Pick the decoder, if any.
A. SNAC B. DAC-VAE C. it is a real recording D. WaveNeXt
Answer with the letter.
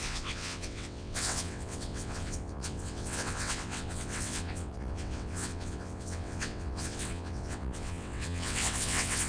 D